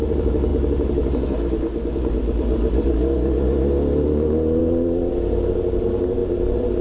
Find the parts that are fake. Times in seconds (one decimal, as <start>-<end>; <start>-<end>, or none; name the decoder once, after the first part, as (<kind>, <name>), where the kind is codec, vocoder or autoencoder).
none